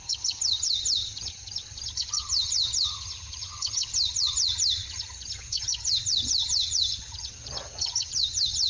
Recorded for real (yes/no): no